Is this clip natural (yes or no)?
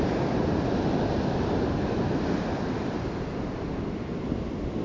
yes